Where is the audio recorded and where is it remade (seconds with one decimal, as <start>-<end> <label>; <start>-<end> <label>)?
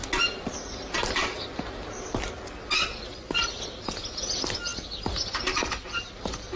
0.0-6.6 recorded